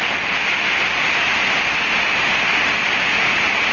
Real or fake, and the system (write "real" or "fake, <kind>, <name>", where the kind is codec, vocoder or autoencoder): real